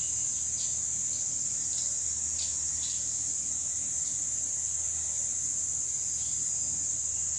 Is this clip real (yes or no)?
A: yes